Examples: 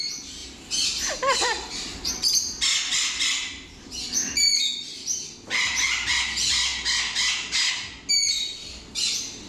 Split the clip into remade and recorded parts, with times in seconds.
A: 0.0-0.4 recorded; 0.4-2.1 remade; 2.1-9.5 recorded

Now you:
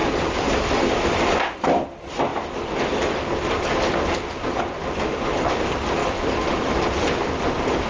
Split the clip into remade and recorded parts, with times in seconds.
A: 0.0-1.7 remade; 1.7-6.0 recorded; 6.0-7.0 remade; 7.0-7.9 recorded

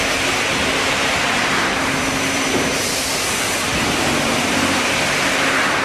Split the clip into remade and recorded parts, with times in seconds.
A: 0.0-1.1 recorded; 1.1-4.6 remade; 4.6-5.8 recorded

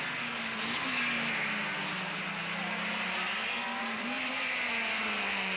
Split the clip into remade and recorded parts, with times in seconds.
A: 0.0-3.8 recorded; 3.8-4.7 remade; 4.7-5.6 recorded

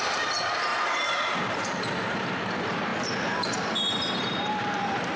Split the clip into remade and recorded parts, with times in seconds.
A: 0.0-0.7 remade; 0.7-1.5 recorded; 1.5-2.9 remade; 2.9-4.5 recorded; 4.5-5.2 remade